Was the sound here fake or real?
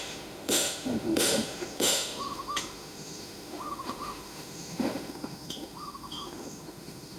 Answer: fake